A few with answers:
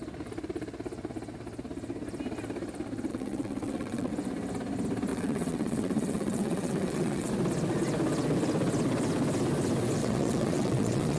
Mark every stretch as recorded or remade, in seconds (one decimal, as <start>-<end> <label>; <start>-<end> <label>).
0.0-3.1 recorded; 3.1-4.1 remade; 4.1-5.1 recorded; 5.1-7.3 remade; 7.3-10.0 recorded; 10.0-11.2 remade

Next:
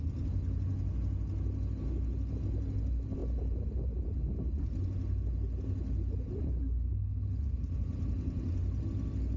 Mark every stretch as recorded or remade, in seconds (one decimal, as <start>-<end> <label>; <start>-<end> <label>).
0.0-6.9 recorded; 6.9-7.7 remade; 7.7-9.4 recorded

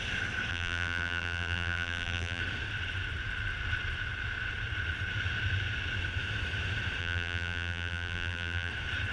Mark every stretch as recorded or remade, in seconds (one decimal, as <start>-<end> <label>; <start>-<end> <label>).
0.0-0.5 recorded; 0.5-2.4 remade; 2.4-7.0 recorded; 7.0-8.7 remade; 8.7-9.1 recorded